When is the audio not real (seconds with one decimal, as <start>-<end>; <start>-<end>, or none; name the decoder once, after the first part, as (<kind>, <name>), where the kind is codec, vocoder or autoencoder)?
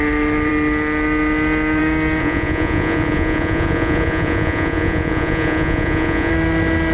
2.2-6.3 (vocoder, Vocos)